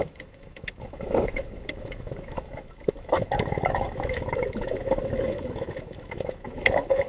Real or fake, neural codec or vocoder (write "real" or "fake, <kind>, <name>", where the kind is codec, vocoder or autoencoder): fake, autoencoder, DAC-VAE